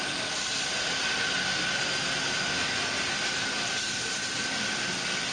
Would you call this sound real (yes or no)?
yes